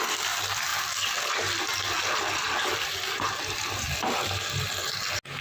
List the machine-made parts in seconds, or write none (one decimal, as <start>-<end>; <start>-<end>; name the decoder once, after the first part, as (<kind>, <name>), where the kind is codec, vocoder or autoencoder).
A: none